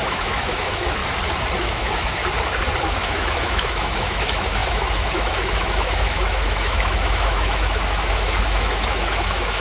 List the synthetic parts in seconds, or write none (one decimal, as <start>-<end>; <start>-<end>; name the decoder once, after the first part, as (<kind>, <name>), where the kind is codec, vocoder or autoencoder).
0.0-1.0 (autoencoder, DAC-VAE); 1.6-2.2; 2.8-9.6

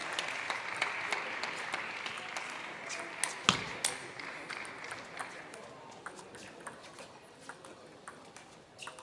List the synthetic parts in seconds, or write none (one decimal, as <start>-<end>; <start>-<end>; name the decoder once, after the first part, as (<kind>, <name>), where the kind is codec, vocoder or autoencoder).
none

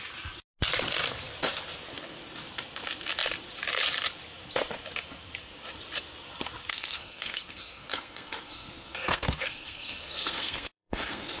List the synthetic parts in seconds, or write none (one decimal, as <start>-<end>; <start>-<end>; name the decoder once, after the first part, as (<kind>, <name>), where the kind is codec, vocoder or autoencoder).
6.7-11.4 (codec, SNAC)

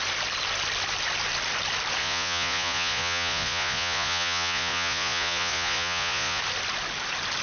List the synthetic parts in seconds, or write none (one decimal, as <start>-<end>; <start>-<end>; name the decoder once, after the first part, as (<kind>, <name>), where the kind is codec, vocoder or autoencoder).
2.0-6.4 (vocoder, Vocos)